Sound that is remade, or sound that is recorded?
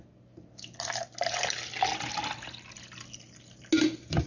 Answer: recorded